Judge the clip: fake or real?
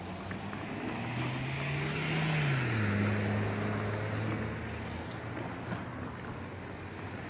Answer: real